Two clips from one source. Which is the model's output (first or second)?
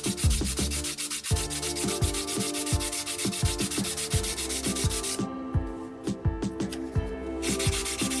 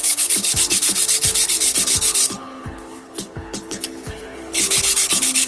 second